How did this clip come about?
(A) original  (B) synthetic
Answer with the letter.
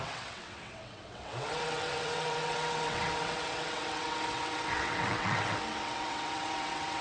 B